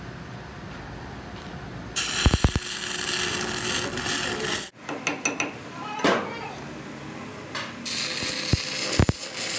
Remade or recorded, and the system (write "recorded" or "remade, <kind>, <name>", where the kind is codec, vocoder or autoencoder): recorded